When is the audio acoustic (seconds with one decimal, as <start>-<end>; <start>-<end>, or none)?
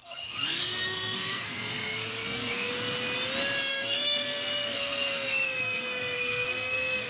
2.7-3.7